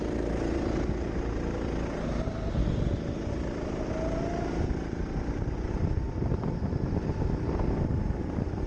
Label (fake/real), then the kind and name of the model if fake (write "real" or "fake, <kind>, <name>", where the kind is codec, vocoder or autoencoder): real